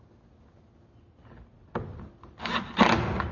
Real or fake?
real